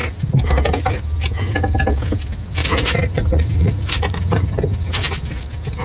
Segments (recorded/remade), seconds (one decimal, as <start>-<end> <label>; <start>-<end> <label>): 0.0-2.6 recorded; 2.6-4.6 remade; 4.6-5.8 recorded